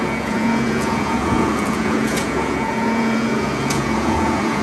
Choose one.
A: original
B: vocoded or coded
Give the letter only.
B